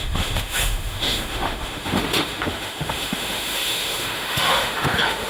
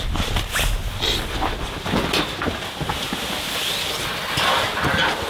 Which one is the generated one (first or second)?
first